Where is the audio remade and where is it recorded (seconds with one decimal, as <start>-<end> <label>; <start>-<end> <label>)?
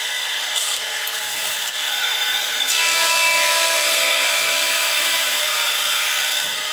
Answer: 0.0-6.7 remade